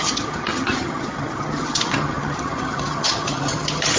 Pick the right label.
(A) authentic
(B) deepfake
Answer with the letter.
B